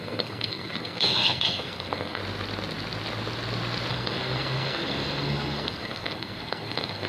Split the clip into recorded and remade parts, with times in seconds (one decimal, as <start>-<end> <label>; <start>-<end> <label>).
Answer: 0.0-2.2 remade; 2.2-3.9 recorded; 3.9-7.1 remade